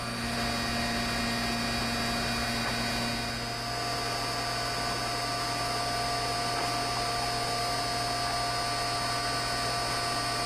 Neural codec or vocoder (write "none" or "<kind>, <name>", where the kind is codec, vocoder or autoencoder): none